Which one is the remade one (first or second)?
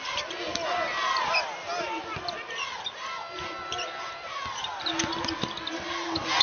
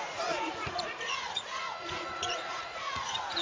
second